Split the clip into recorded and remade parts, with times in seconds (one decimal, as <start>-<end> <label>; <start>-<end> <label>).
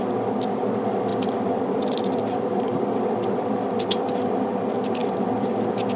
0.0-1.1 recorded; 1.1-4.6 remade; 4.6-5.0 recorded; 5.0-6.0 remade